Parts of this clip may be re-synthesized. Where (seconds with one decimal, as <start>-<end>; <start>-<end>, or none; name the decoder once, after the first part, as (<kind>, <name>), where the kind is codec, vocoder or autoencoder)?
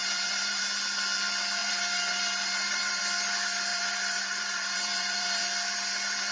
0.0-0.6 (vocoder, BigVGAN v2); 1.6-3.0; 3.7-5.4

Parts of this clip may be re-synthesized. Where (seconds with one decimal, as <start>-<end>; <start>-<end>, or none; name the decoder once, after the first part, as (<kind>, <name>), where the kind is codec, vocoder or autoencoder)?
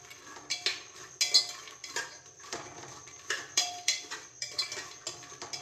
1.8-4.7 (vocoder, BigVGAN v2)